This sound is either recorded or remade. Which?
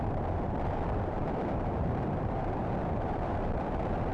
remade